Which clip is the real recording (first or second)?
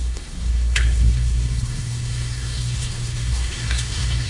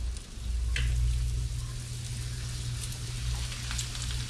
second